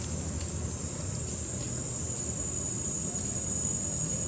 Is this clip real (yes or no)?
yes